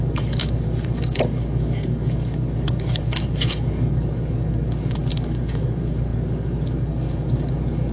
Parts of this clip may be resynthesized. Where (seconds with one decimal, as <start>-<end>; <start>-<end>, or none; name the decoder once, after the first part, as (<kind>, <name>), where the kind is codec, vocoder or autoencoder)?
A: 0.0-7.9 (codec, DAC)